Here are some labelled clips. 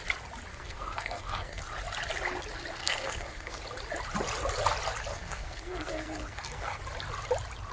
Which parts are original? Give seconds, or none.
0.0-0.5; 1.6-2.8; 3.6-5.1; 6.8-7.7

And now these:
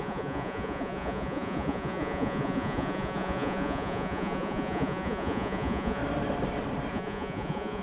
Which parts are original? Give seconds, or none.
6.0-6.9

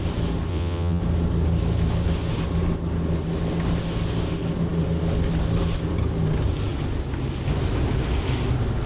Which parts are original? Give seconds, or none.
0.0-0.5; 1.0-8.9

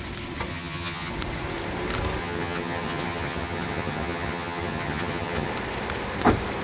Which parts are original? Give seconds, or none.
0.0-0.5; 1.1-2.2; 5.5-6.6